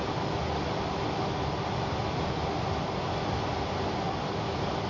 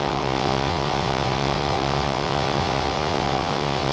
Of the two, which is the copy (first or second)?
second